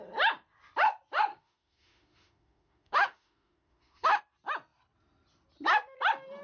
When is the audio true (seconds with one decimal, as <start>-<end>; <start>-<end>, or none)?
0.0-1.3; 4.2-6.4